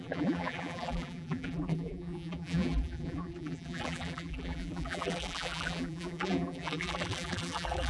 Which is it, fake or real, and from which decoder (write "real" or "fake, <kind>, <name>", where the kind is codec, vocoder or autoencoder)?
fake, vocoder, BigVGAN v2